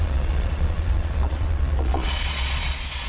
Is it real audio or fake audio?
fake